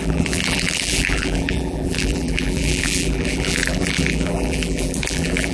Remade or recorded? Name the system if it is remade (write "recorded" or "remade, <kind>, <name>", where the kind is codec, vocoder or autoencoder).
remade, vocoder, BigVGAN v2